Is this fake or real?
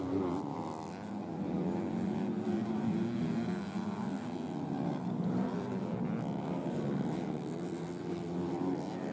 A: real